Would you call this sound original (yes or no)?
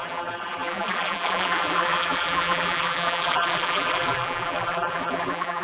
no